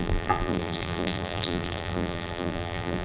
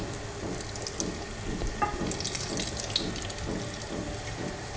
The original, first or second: second